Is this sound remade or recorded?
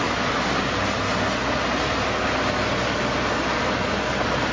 recorded